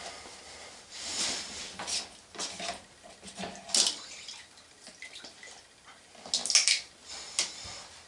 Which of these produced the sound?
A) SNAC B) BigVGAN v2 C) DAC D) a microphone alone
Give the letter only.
D